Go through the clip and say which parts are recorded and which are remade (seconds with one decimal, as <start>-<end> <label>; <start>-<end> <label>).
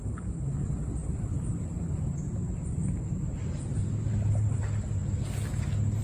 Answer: 0.0-1.0 recorded; 1.0-4.6 remade; 4.6-6.0 recorded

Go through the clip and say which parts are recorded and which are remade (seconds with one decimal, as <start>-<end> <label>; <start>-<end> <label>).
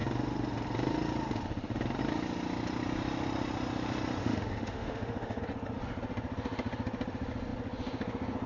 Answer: 0.0-4.2 recorded; 4.2-5.4 remade; 5.4-8.5 recorded